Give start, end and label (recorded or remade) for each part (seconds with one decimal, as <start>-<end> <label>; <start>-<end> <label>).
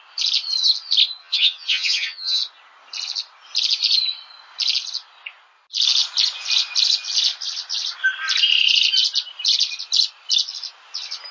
0.0-1.2 recorded; 1.2-2.4 remade; 2.4-11.3 recorded